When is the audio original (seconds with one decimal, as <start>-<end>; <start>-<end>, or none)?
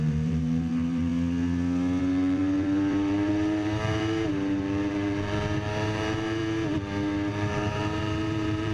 1.1-2.0; 6.4-7.3